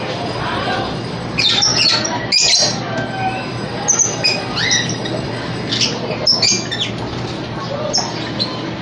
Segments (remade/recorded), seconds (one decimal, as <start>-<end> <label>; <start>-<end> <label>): 0.0-8.8 recorded